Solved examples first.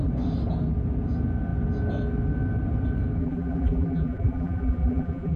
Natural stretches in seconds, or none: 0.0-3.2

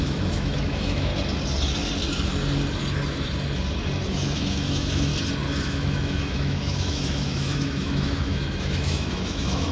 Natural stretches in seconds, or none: 1.1-4.1; 5.1-5.6

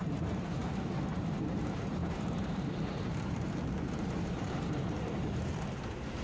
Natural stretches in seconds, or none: 0.6-1.1